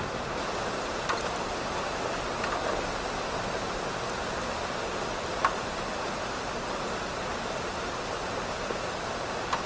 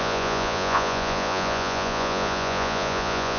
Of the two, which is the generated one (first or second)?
second